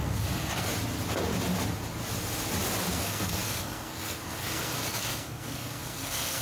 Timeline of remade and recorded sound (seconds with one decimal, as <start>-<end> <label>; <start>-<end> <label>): 0.0-0.7 remade; 0.7-2.9 recorded; 2.9-6.4 remade